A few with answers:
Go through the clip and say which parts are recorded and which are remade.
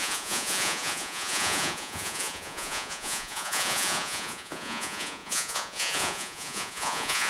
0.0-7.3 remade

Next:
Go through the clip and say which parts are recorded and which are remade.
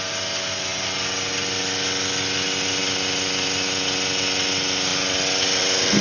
0.0-6.0 recorded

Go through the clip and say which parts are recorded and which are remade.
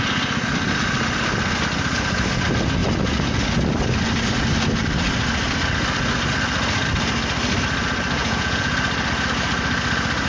0.0-8.2 recorded; 8.2-8.7 remade; 8.7-10.3 recorded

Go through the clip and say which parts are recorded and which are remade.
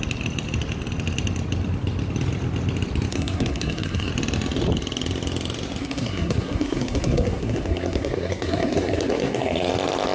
0.0-3.1 recorded; 3.1-4.1 remade; 4.1-5.8 recorded; 5.8-9.7 remade; 9.7-10.1 recorded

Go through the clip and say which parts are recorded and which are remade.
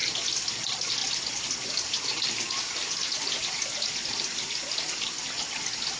0.0-0.6 remade; 0.6-6.0 recorded